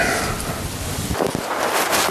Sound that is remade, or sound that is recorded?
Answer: recorded